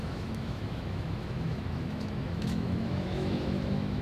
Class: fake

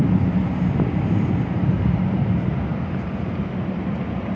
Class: real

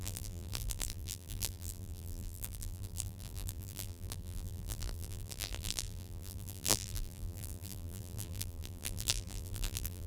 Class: fake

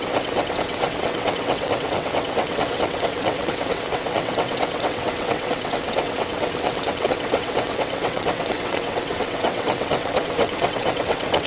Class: fake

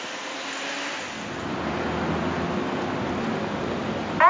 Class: real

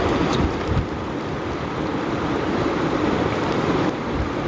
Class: real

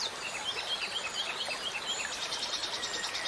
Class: real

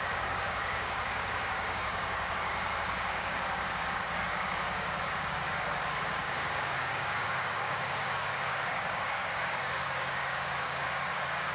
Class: fake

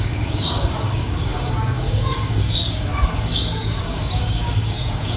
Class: fake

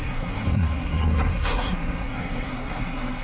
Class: fake